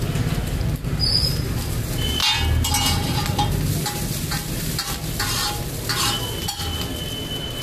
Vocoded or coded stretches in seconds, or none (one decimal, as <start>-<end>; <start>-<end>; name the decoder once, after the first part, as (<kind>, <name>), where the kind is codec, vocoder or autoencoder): none